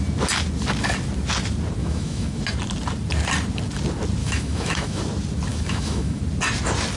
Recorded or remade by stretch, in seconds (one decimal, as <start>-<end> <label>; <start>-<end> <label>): 0.0-1.8 recorded; 1.8-2.4 remade; 2.4-4.2 recorded; 4.2-5.0 remade; 5.0-5.5 recorded; 5.5-6.2 remade; 6.2-7.0 recorded